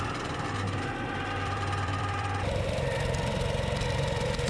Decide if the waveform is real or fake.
fake